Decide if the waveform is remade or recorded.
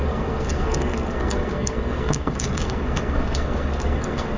remade